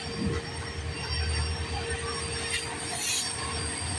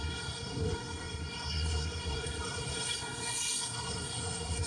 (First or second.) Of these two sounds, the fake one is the second